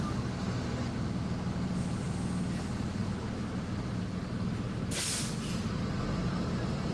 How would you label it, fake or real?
real